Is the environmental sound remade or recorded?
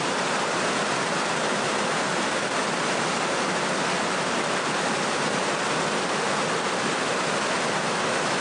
recorded